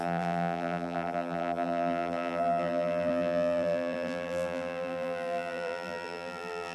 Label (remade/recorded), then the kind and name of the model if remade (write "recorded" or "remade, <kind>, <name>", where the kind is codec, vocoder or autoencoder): remade, vocoder, BigVGAN v2